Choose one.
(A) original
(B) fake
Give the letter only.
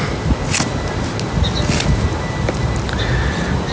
A